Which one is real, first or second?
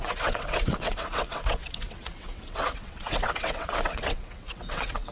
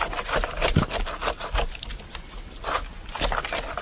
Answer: second